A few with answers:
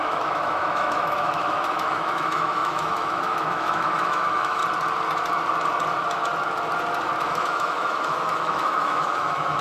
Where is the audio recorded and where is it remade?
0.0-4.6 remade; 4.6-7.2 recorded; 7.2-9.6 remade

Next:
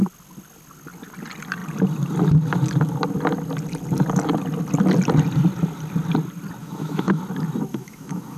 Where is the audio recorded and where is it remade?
0.0-6.6 recorded; 6.6-7.2 remade; 7.2-7.7 recorded; 7.7-8.4 remade

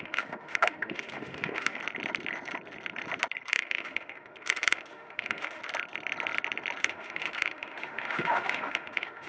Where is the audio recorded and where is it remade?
0.0-1.8 remade; 1.8-3.5 recorded; 3.5-5.6 remade; 5.6-6.8 recorded; 6.8-9.3 remade

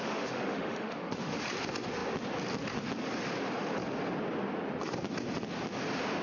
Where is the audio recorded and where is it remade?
0.0-1.4 remade; 1.4-6.2 recorded

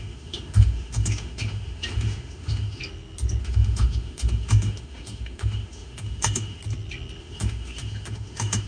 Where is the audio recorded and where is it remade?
0.0-2.8 remade; 2.8-3.4 recorded; 3.4-6.6 remade; 6.6-7.2 recorded; 7.2-8.7 remade

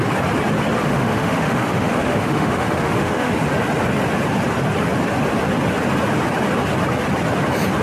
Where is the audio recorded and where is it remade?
0.0-0.8 recorded; 0.8-3.3 remade; 3.3-7.8 recorded

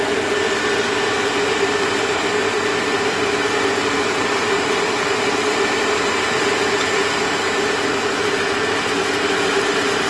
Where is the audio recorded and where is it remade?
0.0-10.1 recorded

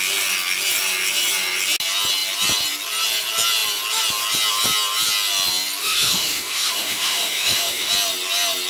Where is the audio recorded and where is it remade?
0.0-5.8 recorded; 5.8-7.9 remade; 7.9-8.7 recorded